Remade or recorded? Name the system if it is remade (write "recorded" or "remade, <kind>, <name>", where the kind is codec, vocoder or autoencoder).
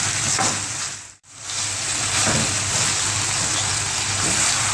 remade, vocoder, BigVGAN v2